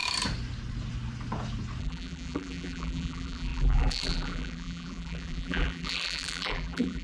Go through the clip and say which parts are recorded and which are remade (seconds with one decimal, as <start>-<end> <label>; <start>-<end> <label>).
0.0-1.8 recorded; 1.8-7.0 remade